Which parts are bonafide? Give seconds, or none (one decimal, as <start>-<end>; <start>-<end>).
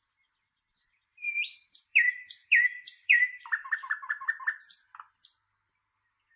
0.0-0.5; 4.3-6.4